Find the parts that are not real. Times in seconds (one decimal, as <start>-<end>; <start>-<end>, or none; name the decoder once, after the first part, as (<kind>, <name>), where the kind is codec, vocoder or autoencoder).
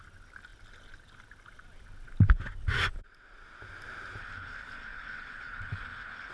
4.2-6.3 (codec, HILCodec)